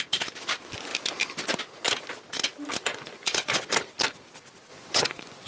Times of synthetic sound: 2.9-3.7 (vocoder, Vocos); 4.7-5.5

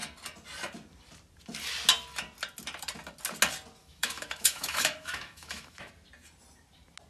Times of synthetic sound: 3.8-5.9 (autoencoder, DAC-VAE)

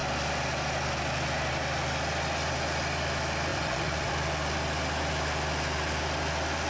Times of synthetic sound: 3.5-4.1 (vocoder, Vocos)